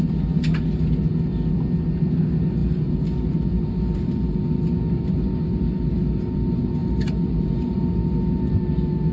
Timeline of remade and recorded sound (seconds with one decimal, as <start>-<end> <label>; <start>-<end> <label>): 0.0-2.6 recorded; 2.6-5.3 remade; 5.3-6.8 recorded; 6.8-7.8 remade; 7.8-9.1 recorded